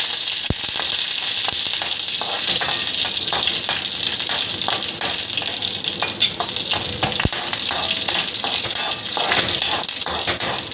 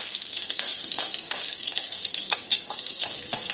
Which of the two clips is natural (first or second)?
first